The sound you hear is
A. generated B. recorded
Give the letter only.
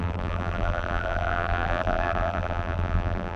A